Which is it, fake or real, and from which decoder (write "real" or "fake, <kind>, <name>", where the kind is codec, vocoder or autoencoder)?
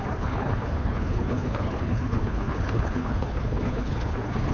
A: fake, codec, HILCodec